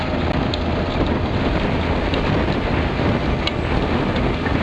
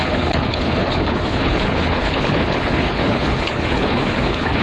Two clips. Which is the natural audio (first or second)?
first